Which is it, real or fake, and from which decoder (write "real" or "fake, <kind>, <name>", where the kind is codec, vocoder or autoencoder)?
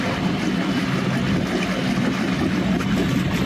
real